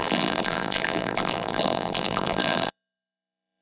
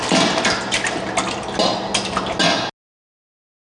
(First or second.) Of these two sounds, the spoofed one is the first